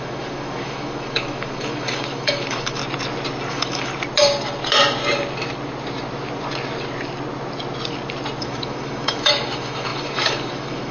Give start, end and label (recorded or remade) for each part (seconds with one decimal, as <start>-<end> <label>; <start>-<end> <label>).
0.0-2.8 remade; 2.8-3.5 recorded; 3.5-3.9 remade; 3.9-8.4 recorded; 8.4-10.9 remade